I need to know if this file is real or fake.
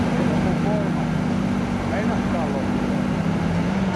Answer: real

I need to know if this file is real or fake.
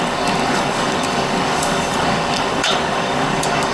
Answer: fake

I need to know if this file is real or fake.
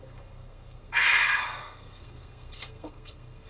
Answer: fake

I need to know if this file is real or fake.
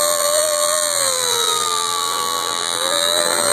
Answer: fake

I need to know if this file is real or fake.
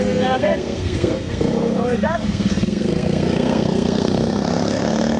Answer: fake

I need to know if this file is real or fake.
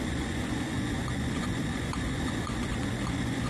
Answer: fake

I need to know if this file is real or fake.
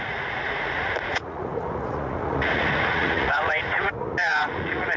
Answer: fake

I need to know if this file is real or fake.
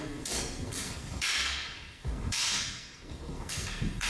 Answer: fake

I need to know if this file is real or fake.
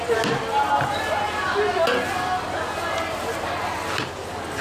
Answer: real